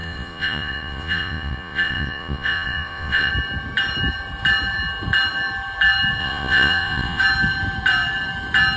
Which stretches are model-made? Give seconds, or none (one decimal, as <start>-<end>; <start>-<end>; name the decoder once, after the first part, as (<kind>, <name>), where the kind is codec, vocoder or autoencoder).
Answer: 0.0-3.3 (vocoder, Vocos); 6.2-7.2